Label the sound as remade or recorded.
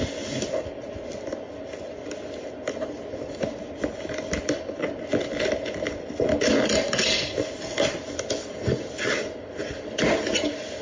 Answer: recorded